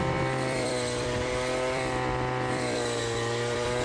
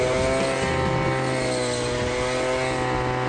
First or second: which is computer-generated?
first